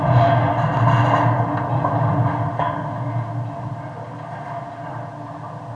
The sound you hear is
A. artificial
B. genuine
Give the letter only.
B